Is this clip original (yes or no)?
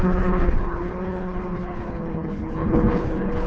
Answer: no